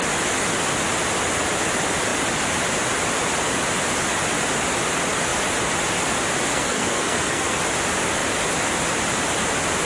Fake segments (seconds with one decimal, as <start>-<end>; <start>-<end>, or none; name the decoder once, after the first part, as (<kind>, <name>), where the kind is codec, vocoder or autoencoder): 6.5-7.6 (codec, SNAC)